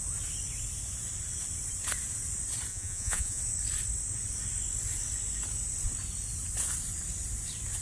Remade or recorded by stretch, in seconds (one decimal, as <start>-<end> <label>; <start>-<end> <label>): 0.0-2.7 recorded; 2.7-3.4 remade; 3.4-7.8 recorded